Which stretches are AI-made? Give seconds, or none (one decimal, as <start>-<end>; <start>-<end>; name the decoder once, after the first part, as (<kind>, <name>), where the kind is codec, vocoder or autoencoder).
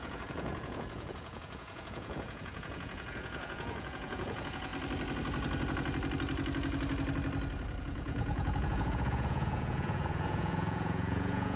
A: 0.0-4.7 (vocoder, Vocos); 7.8-11.6